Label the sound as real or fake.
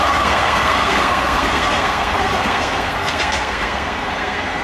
fake